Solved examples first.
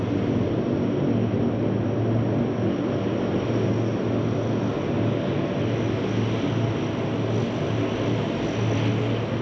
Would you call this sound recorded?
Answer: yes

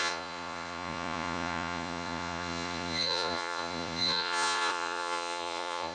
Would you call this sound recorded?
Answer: no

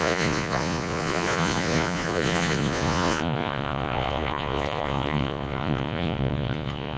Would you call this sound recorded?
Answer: no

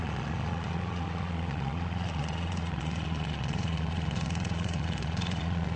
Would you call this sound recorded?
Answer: no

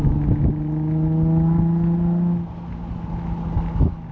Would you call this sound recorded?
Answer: yes